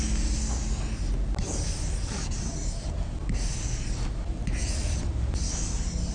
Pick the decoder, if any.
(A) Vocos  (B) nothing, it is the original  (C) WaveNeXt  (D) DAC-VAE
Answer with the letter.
B